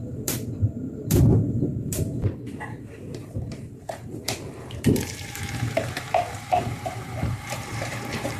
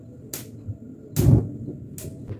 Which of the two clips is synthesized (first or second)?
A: first